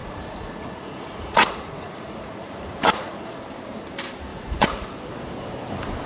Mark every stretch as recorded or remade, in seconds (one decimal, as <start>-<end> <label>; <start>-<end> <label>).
0.0-3.4 remade; 3.4-4.3 recorded; 4.3-4.9 remade; 4.9-6.1 recorded